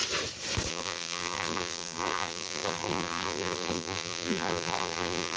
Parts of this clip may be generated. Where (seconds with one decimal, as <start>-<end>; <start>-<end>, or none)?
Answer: 0.7-5.4